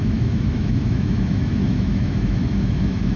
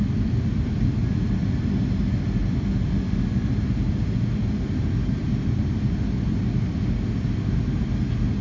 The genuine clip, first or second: second